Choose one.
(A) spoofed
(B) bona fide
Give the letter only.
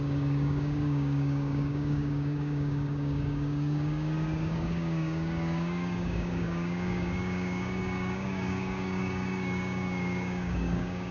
A